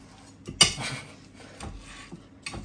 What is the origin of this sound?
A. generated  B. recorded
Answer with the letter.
B